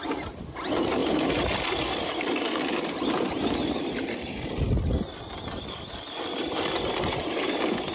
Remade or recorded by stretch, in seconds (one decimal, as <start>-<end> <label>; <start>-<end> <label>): 0.0-7.9 recorded

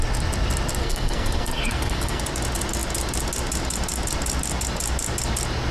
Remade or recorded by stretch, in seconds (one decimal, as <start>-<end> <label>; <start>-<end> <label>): 0.0-0.8 recorded; 0.8-2.2 remade; 2.2-5.7 recorded

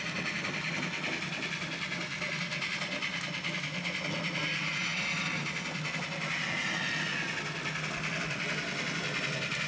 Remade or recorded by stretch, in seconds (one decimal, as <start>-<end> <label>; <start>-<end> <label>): 0.0-9.7 recorded

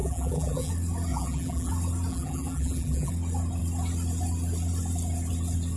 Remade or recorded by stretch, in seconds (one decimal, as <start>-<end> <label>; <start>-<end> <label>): 0.0-0.7 remade; 0.7-1.1 recorded; 1.1-1.7 remade; 1.7-2.1 recorded; 2.1-3.1 remade; 3.1-5.8 recorded

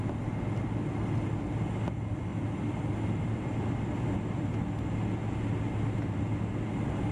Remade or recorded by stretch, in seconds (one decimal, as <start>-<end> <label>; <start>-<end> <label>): 0.0-2.3 recorded; 2.3-4.6 remade; 4.6-7.1 recorded

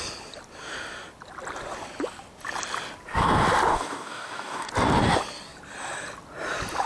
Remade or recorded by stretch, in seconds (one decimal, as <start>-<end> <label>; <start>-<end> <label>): 0.0-3.7 recorded; 3.7-4.7 remade; 4.7-6.9 recorded

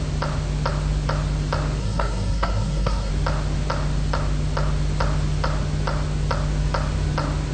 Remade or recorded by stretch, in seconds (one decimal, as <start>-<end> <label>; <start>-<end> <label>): 0.0-1.8 recorded; 1.8-3.1 remade; 3.1-7.5 recorded

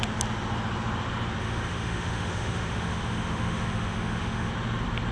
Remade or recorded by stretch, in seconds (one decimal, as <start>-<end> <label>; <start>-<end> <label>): 0.0-1.4 recorded; 1.4-4.5 remade; 4.5-5.1 recorded